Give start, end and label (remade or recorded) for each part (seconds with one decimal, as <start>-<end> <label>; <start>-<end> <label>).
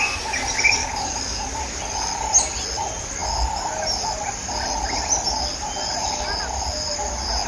0.0-0.8 recorded; 0.8-1.8 remade; 1.8-7.5 recorded